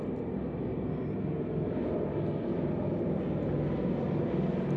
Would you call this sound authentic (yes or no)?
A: yes